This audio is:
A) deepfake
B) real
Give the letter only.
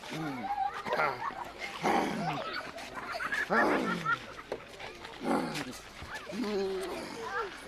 B